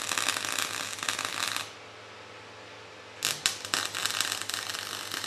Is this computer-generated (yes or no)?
no